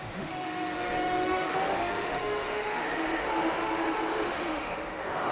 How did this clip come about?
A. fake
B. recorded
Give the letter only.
A